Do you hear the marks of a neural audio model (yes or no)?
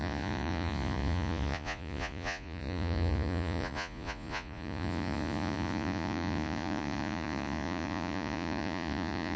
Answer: yes